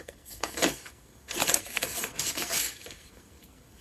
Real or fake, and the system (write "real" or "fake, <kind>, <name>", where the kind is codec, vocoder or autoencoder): fake, codec, SNAC